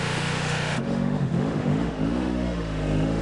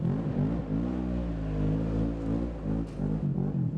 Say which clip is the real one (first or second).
second